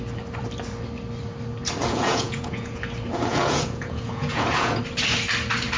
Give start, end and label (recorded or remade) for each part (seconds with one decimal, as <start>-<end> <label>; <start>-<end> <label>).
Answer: 0.0-1.8 recorded; 1.8-2.8 remade; 2.8-3.3 recorded; 3.3-4.8 remade; 4.8-5.8 recorded